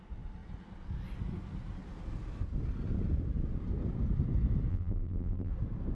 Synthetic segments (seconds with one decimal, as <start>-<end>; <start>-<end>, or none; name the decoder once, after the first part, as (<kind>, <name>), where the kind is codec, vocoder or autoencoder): 4.7-5.5 (vocoder, BigVGAN v2)